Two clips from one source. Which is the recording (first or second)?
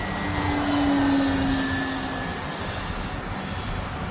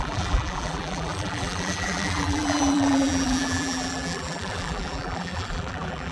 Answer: first